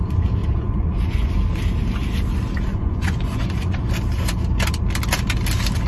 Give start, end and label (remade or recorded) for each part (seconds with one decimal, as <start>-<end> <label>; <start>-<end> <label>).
0.0-0.4 recorded; 0.4-1.3 remade; 1.3-2.7 recorded; 2.7-3.9 remade; 3.9-5.9 recorded